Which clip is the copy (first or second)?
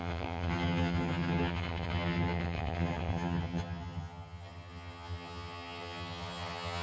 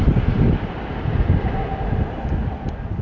first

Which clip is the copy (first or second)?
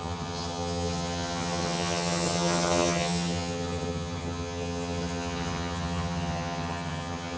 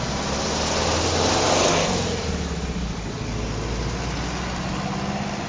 first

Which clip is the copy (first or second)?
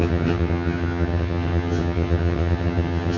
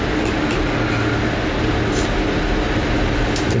first